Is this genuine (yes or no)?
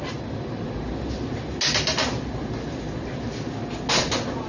yes